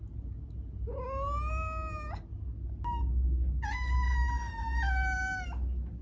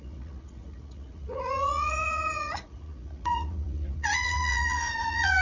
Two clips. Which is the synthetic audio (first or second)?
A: second